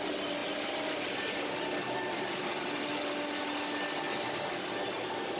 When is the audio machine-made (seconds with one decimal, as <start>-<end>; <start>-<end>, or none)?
none